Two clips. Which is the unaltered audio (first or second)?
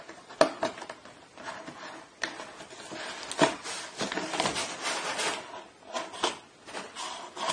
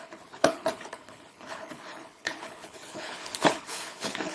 first